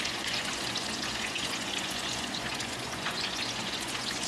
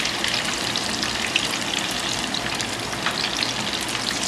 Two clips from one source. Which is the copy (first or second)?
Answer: first